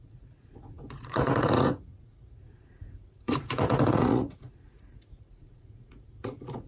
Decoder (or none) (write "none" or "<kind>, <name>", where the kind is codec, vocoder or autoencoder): vocoder, Vocos